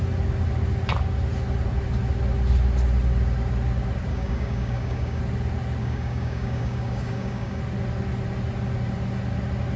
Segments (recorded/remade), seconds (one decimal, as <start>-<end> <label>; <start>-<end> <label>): 0.0-4.1 recorded; 4.1-5.2 remade; 5.2-5.8 recorded; 5.8-7.6 remade; 7.6-9.8 recorded

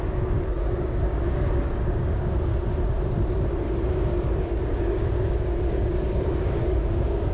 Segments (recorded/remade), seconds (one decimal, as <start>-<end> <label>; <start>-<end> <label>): 0.0-2.5 remade; 2.5-3.9 recorded; 3.9-7.3 remade